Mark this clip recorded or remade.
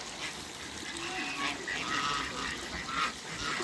recorded